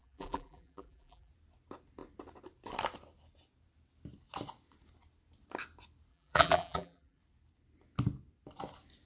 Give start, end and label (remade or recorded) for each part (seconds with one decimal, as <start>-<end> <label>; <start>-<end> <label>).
0.0-1.3 remade; 1.3-6.1 recorded; 6.1-7.2 remade; 7.2-9.1 recorded